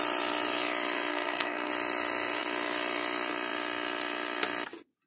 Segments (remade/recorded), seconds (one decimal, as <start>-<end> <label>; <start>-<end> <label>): 0.0-1.1 recorded; 1.1-1.7 remade; 1.7-5.1 recorded